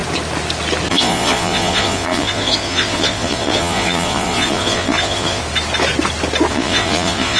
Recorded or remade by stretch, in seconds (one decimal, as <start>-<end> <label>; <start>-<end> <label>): 0.0-0.9 recorded; 0.9-5.4 remade; 5.4-6.5 recorded; 6.5-7.4 remade